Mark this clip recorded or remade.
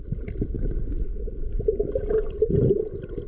recorded